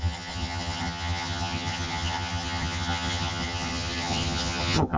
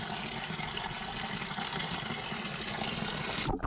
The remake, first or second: first